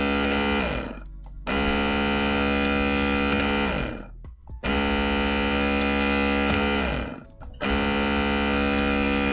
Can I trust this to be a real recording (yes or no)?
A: yes